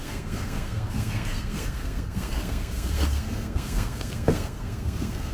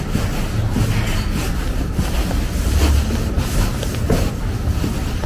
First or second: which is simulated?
first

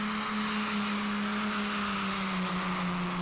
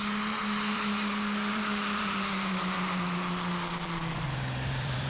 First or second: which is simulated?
second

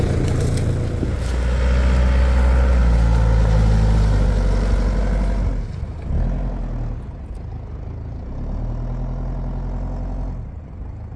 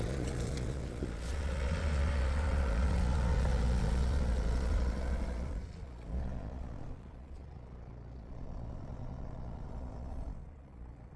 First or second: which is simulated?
second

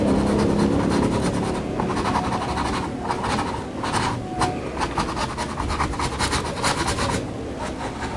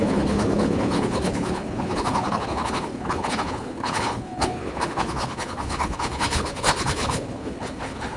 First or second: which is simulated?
second